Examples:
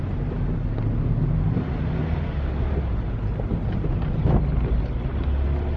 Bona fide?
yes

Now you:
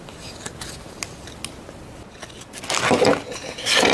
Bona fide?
yes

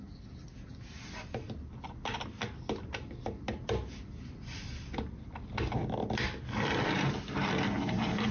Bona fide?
yes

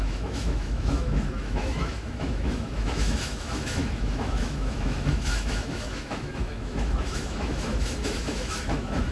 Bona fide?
no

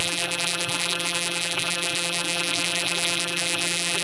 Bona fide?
no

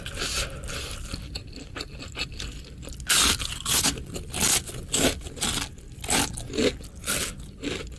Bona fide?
yes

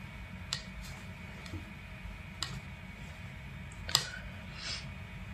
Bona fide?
yes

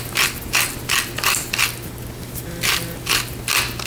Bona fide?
yes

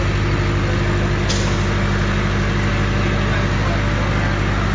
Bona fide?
yes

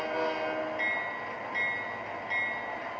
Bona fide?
yes